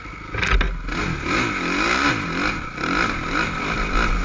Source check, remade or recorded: recorded